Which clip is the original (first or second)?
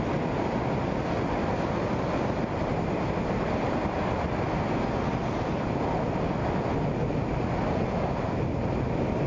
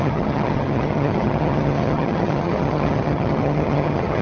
first